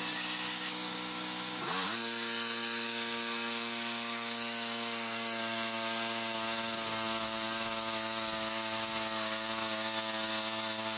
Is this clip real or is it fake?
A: fake